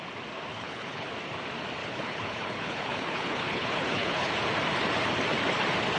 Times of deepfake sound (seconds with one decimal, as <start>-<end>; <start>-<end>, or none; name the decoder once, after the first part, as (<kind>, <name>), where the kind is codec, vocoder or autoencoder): 0.5-1.1 (codec, HILCodec); 1.8-4.3